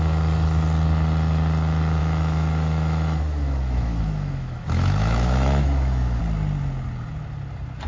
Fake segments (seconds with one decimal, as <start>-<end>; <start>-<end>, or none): 2.0-6.2